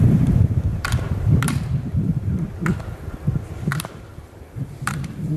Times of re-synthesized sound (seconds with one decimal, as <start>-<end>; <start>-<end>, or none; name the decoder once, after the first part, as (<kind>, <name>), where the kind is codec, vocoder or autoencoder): 0.7-2.3 (vocoder, BigVGAN v2); 3.7-5.4